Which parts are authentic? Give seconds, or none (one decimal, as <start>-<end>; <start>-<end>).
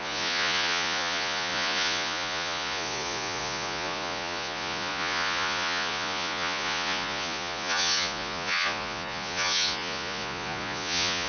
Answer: none